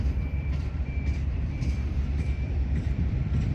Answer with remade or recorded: remade